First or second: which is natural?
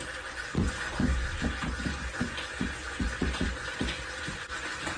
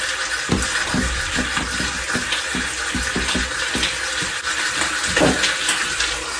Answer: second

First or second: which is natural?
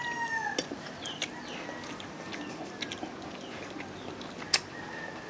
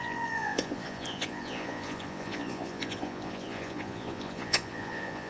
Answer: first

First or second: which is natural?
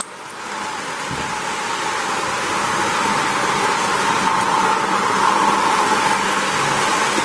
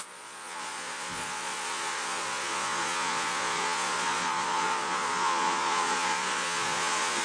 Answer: first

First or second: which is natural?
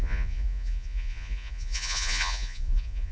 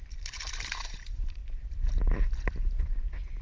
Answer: second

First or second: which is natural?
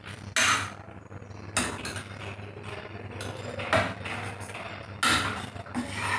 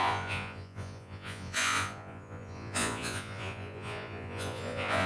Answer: first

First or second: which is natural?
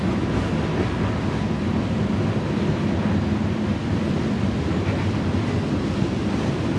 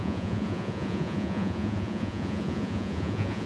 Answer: first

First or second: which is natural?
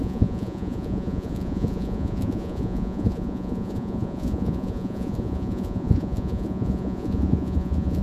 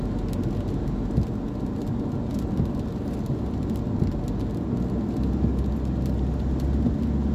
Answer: second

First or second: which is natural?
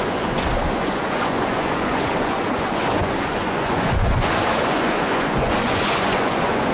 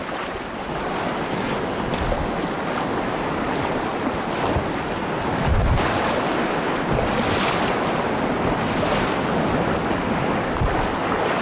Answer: second